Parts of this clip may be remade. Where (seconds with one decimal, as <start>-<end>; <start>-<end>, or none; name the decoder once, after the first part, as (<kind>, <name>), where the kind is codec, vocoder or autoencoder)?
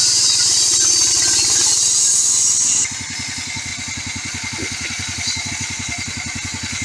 none